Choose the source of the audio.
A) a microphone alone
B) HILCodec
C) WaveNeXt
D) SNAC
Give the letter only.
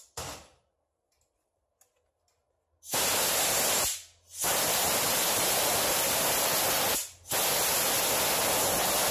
A